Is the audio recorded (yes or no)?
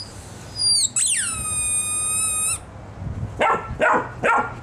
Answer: yes